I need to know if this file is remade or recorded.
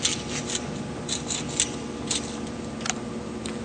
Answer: recorded